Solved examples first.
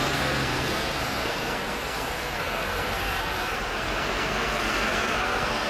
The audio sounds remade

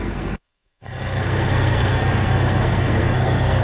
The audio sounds remade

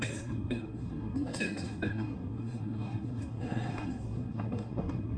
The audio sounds remade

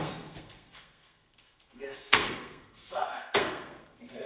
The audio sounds remade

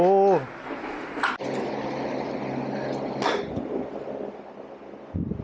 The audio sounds recorded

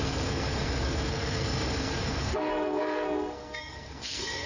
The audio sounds remade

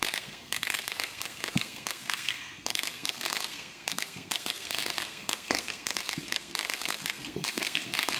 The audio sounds remade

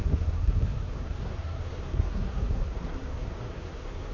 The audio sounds remade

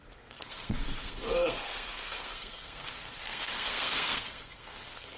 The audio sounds remade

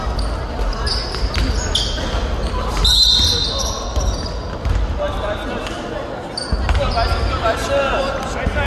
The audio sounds recorded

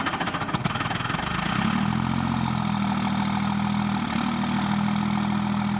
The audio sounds recorded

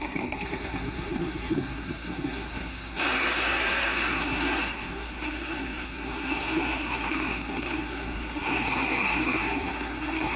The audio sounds remade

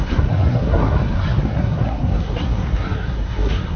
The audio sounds remade